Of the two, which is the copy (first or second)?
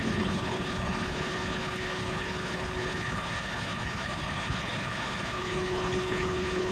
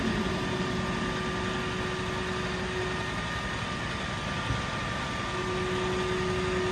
first